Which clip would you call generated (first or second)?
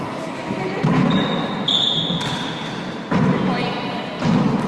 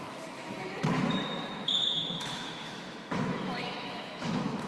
second